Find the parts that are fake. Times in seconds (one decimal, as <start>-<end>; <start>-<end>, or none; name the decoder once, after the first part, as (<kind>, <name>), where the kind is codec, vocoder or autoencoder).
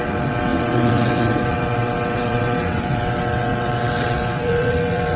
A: 0.0-5.2 (vocoder, WaveNeXt)